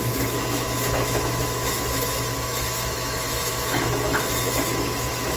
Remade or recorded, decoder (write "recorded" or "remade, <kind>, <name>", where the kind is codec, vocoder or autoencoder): remade, autoencoder, DAC-VAE